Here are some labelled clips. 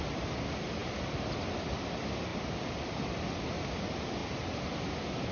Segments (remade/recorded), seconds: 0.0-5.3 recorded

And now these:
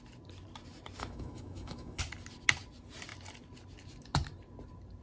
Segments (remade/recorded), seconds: 0.0-1.0 recorded; 1.0-2.0 remade; 2.0-5.0 recorded

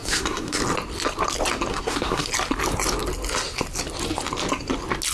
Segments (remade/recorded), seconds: 0.0-0.6 remade; 0.6-1.7 recorded; 1.7-2.3 remade; 2.3-5.1 recorded

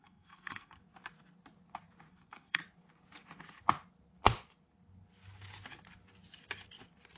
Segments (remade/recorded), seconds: 0.0-0.8 remade; 0.8-2.1 recorded; 2.1-2.6 remade; 2.6-7.2 recorded

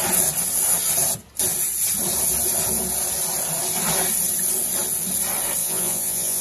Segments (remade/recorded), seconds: 0.0-5.6 recorded; 5.6-6.4 remade